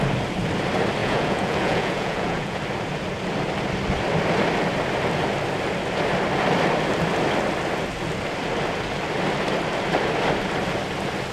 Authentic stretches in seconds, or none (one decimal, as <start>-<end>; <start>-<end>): 0.0-1.0; 2.6-11.3